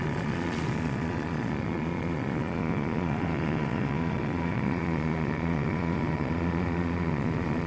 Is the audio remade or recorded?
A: remade